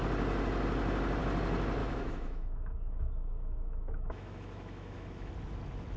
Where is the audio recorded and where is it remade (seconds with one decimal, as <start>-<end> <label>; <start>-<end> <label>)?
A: 0.0-1.8 recorded; 1.8-5.3 remade; 5.3-6.0 recorded